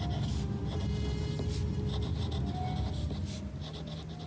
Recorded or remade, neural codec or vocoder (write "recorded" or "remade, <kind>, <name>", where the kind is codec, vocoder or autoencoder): recorded